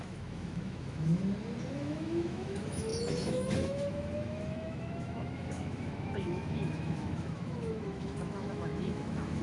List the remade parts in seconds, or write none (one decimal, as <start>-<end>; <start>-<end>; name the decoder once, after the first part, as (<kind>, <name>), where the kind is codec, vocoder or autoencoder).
0.0-1.2 (autoencoder, DAC-VAE); 1.7-9.4